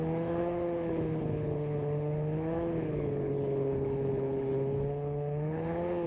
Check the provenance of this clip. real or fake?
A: fake